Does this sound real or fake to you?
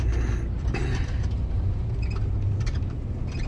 fake